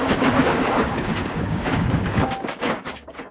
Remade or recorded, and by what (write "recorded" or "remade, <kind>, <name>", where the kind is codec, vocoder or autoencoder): remade, codec, DAC